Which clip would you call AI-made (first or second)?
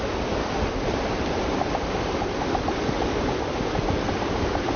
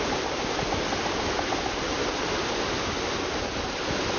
first